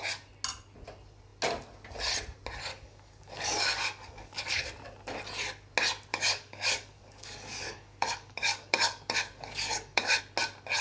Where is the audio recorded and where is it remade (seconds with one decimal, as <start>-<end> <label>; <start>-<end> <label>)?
0.0-2.7 recorded; 2.7-4.6 remade; 4.6-6.1 recorded; 6.1-10.2 remade; 10.2-10.8 recorded